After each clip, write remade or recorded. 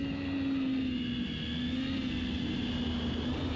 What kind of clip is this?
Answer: recorded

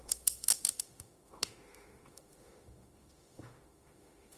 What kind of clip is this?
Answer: remade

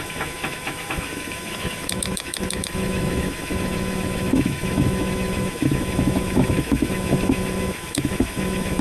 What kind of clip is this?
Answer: remade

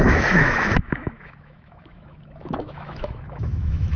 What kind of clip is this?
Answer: remade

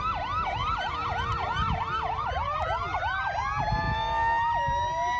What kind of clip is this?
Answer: recorded